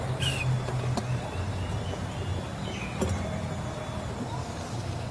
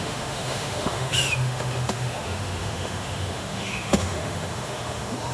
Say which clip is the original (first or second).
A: first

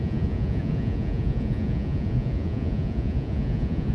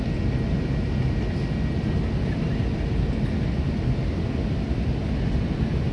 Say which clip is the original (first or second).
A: second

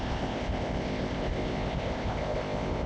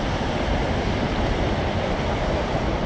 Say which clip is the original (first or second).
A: second